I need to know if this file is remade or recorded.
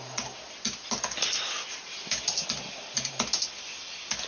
recorded